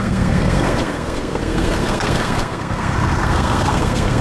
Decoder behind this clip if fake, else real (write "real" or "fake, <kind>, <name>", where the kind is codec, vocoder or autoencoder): fake, codec, SNAC